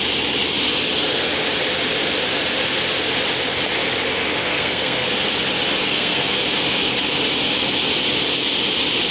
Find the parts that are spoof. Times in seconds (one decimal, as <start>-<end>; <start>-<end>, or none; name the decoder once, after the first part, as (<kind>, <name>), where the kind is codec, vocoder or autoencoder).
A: 4.4-5.1 (codec, SNAC); 5.8-6.4